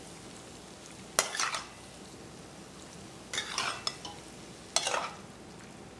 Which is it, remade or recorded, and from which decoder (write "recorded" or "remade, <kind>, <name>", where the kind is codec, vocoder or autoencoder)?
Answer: recorded